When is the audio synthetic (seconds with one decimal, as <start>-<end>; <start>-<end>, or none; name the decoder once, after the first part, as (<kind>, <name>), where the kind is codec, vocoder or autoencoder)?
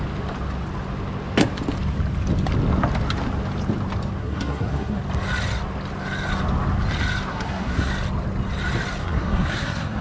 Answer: 4.2-5.0 (codec, SNAC); 7.3-7.9; 9.0-10.0